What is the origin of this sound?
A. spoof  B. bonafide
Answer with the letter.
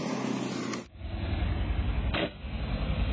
B